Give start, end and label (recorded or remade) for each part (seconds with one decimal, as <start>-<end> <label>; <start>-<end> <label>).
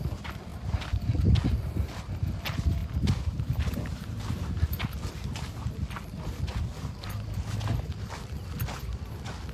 0.0-0.5 recorded; 0.5-1.2 remade; 1.2-2.8 recorded; 2.8-8.1 remade; 8.1-9.5 recorded